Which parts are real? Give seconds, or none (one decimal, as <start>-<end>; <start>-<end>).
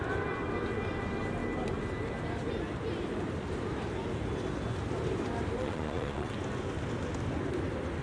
0.0-5.6; 6.3-8.0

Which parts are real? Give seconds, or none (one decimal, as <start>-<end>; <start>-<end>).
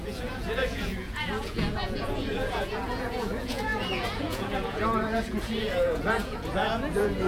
none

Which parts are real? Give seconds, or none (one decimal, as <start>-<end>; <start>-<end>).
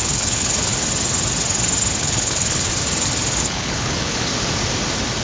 0.7-2.0; 2.7-3.4; 4.3-5.2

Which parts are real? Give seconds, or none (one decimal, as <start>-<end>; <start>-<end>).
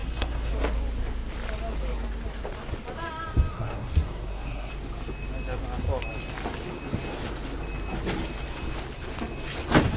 0.5-3.5; 4.7-10.0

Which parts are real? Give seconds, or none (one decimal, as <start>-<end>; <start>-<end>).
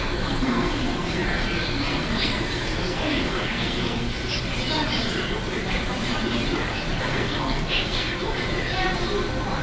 4.2-7.0; 8.4-9.6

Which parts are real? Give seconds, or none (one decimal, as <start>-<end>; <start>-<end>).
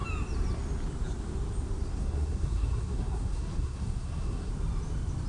0.0-1.9; 4.5-5.3